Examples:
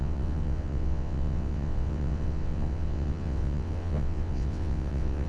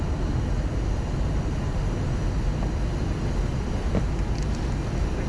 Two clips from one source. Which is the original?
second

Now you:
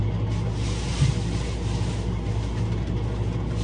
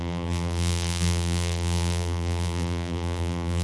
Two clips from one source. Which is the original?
first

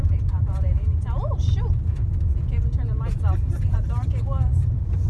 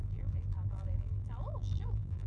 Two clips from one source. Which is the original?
first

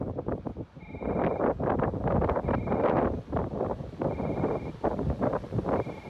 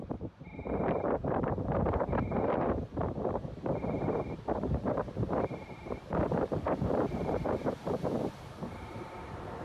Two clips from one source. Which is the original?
first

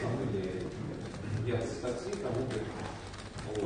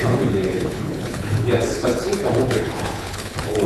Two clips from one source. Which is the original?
first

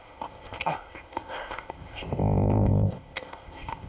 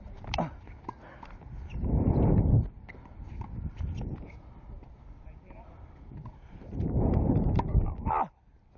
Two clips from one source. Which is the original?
second